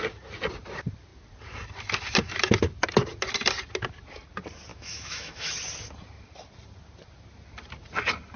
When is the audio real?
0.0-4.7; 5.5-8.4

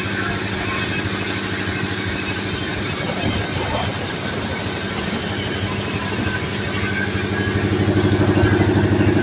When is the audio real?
0.0-9.2

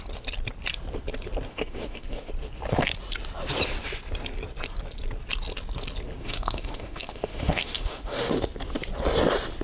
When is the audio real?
0.0-1.5; 2.3-6.2; 8.3-9.6

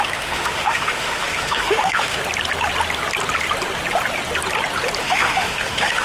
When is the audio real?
2.2-5.0

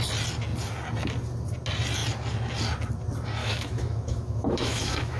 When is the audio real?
0.0-3.4